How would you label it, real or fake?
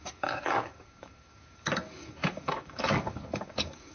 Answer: fake